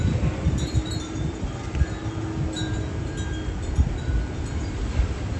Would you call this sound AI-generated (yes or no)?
yes